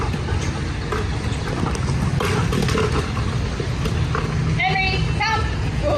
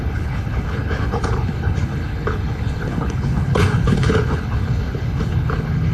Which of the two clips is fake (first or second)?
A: second